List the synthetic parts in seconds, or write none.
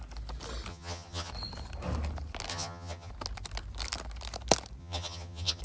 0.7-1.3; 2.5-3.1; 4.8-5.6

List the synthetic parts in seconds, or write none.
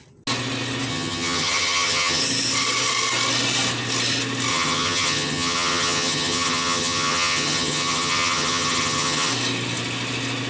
0.9-2.2; 4.5-9.3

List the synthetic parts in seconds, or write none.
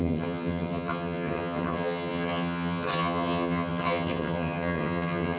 0.0-5.4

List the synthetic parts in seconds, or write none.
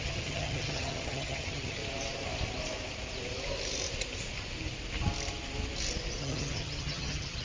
0.0-1.8; 6.2-7.4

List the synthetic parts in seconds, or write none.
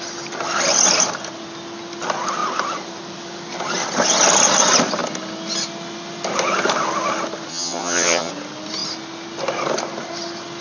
7.5-8.3